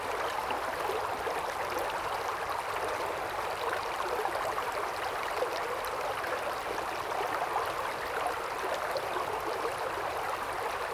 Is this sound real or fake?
fake